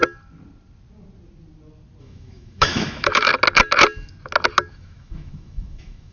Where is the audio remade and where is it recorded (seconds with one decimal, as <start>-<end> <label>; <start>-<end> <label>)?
0.0-2.0 recorded; 2.0-3.3 remade; 3.3-4.7 recorded; 4.7-6.1 remade